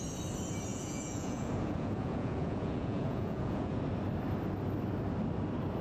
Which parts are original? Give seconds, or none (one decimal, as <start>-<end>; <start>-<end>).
0.0-0.7; 3.8-5.8